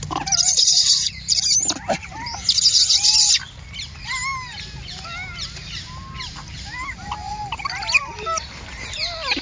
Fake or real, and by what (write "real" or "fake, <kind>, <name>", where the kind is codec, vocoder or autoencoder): real